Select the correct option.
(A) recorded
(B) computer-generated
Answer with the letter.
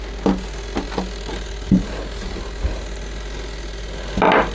A